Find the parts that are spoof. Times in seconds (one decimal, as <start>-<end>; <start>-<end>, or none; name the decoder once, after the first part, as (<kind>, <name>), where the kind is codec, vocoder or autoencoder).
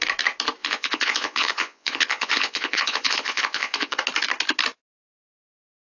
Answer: 0.6-4.0 (vocoder, Vocos)